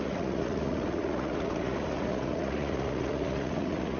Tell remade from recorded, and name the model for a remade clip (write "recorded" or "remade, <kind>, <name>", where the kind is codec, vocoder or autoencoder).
remade, vocoder, Vocos